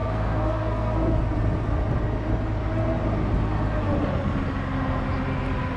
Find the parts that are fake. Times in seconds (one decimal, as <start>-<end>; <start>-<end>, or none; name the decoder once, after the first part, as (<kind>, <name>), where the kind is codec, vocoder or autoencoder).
0.0-0.9 (codec, SNAC)